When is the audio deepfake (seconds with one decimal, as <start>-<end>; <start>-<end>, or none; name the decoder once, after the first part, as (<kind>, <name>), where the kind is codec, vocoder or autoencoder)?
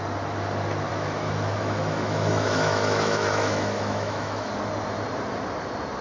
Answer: 0.9-4.5 (autoencoder, DAC-VAE)